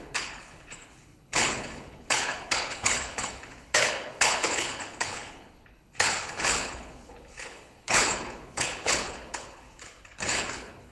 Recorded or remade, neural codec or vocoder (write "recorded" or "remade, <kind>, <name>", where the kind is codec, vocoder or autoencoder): remade, codec, HILCodec